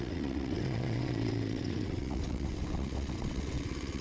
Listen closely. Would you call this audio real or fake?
fake